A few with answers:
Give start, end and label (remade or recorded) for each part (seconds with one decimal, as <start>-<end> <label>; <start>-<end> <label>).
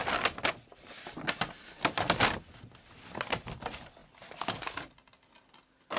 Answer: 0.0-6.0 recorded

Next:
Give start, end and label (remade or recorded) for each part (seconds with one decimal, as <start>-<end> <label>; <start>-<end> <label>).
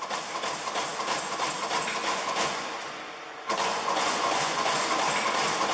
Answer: 0.0-2.0 recorded; 2.0-4.9 remade; 4.9-5.7 recorded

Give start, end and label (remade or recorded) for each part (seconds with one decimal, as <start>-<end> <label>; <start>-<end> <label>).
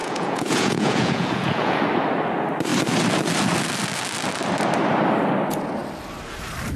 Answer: 0.0-1.8 remade; 1.8-6.8 recorded